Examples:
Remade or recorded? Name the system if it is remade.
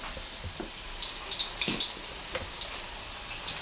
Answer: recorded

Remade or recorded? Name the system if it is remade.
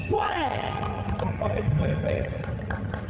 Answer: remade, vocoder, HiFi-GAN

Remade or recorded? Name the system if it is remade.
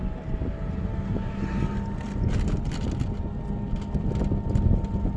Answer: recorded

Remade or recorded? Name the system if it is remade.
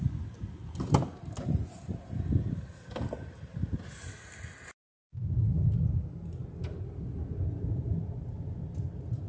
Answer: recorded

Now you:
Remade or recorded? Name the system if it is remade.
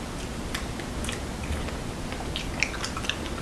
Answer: recorded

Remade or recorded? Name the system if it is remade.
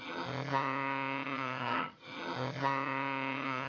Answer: remade, vocoder, HiFi-GAN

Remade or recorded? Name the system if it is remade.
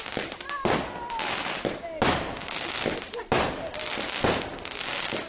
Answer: recorded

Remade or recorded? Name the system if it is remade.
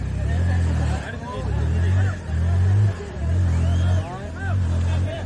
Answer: recorded